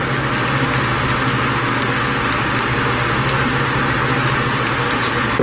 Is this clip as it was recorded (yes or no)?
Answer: yes